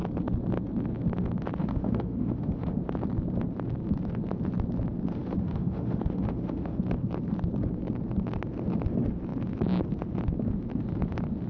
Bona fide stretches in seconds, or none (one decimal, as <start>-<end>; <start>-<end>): 0.0-1.6; 2.8-5.1; 6.8-11.5